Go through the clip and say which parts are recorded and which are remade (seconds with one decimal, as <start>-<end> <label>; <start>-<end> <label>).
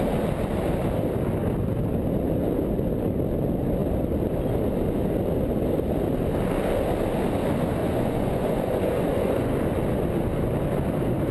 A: 0.0-7.8 recorded; 7.8-9.5 remade; 9.5-11.3 recorded